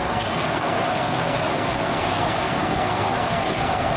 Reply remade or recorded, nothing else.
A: remade